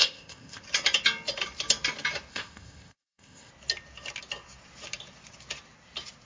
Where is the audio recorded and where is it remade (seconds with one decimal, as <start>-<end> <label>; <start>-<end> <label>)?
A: 0.0-0.6 remade; 0.6-2.3 recorded; 2.3-3.5 remade; 3.5-6.3 recorded

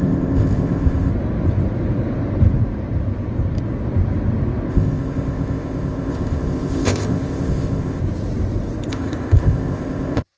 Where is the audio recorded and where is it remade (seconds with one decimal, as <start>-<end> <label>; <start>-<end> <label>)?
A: 0.0-1.1 remade; 1.1-4.7 recorded; 4.7-8.0 remade; 8.0-8.9 recorded; 8.9-10.4 remade

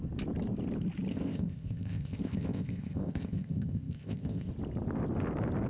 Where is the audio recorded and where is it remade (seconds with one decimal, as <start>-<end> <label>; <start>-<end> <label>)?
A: 0.0-1.1 recorded; 1.1-4.5 remade; 4.5-5.7 recorded

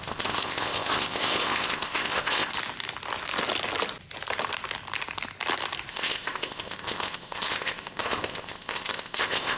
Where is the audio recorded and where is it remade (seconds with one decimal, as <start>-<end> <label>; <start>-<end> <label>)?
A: 0.0-2.5 remade; 2.5-5.9 recorded; 5.9-9.6 remade

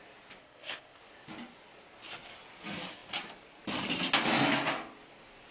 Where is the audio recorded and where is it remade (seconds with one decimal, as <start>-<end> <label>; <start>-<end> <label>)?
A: 0.0-0.4 recorded; 0.4-1.0 remade; 1.0-5.5 recorded

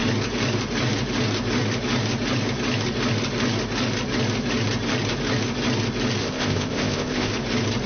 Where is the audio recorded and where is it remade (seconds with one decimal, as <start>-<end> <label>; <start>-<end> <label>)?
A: 0.0-6.2 recorded; 6.2-7.3 remade; 7.3-7.9 recorded